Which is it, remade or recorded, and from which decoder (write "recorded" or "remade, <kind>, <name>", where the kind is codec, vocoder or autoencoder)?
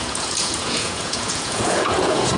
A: remade, vocoder, Vocos